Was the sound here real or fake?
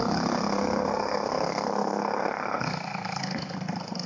fake